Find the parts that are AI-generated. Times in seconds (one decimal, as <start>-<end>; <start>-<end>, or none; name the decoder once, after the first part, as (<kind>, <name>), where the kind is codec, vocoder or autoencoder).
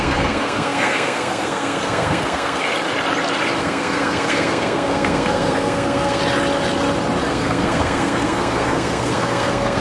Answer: 0.0-2.6 (codec, SNAC); 3.6-6.2; 7.3-9.8